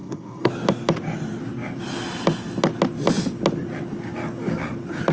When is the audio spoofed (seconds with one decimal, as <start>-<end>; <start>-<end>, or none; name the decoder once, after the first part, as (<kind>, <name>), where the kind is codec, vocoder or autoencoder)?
0.0-0.5 (codec, SNAC)